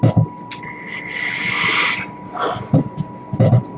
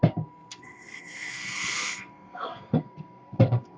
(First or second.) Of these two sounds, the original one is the first